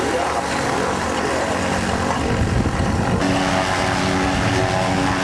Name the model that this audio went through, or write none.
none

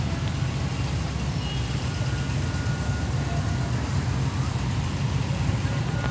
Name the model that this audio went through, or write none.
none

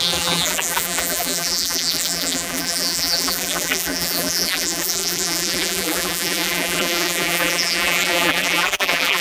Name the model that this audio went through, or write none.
vocoder, BigVGAN v2